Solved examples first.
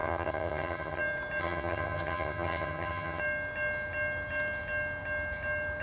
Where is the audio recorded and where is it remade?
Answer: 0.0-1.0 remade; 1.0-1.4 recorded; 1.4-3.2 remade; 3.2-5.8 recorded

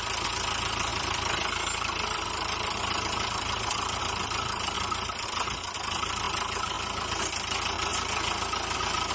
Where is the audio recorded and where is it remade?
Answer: 0.0-0.9 recorded; 0.9-4.0 remade; 4.0-9.1 recorded

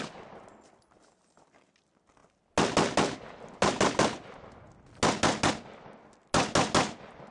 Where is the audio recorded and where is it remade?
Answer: 0.0-7.3 recorded

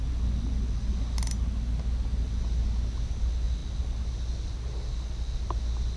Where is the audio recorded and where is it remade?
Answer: 0.0-6.0 recorded

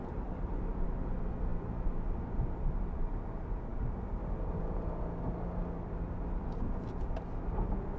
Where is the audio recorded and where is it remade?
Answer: 0.0-8.0 recorded

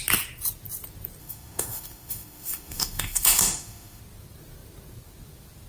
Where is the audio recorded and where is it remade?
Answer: 0.0-1.2 recorded; 1.2-4.0 remade; 4.0-5.7 recorded

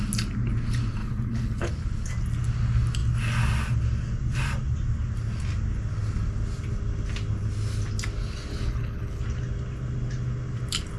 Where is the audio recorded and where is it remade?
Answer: 0.0-1.0 recorded; 1.0-1.7 remade; 1.7-8.5 recorded; 8.5-9.2 remade; 9.2-11.0 recorded